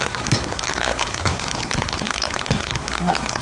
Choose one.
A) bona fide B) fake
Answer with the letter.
B